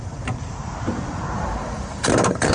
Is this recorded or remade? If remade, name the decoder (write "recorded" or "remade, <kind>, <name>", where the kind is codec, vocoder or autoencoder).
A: remade, vocoder, BigVGAN v2